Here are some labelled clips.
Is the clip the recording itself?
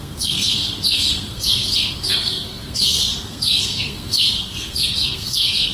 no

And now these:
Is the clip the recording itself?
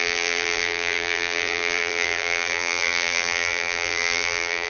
no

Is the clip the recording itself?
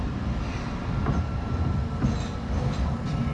yes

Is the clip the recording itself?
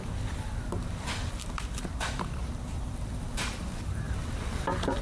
no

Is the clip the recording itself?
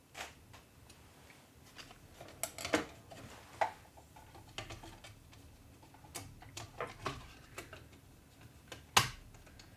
yes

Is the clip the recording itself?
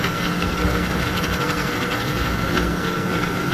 no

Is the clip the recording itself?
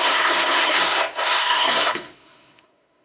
no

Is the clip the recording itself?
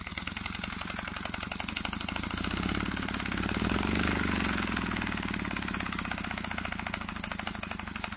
yes